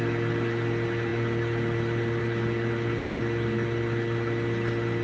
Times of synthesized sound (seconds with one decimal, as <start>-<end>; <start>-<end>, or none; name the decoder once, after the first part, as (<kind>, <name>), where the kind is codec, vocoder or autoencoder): 1.1-2.2 (vocoder, BigVGAN v2)